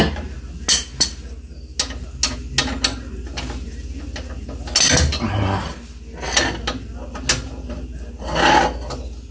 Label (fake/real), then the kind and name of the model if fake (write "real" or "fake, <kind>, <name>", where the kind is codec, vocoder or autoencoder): real